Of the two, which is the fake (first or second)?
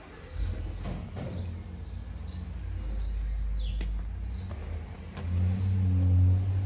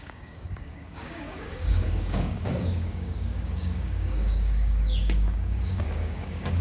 second